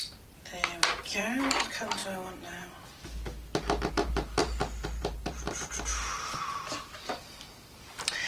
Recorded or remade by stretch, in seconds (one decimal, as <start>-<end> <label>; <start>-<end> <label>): 0.0-2.0 remade; 2.0-3.9 recorded; 3.9-8.3 remade